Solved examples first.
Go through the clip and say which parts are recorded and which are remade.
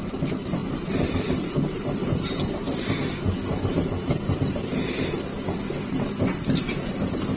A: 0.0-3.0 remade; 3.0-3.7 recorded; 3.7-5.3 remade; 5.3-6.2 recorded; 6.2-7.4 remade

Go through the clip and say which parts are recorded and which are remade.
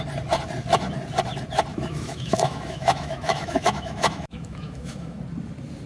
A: 0.0-1.7 recorded; 1.7-5.2 remade; 5.2-5.9 recorded